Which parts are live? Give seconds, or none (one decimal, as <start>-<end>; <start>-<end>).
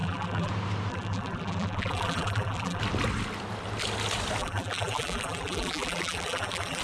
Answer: 0.5-0.9; 2.8-4.4